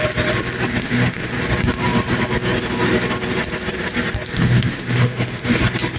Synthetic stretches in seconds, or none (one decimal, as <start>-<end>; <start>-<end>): 0.8-1.3; 4.3-5.6